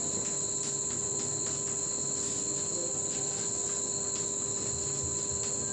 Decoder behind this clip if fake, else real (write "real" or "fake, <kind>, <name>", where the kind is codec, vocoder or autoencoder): real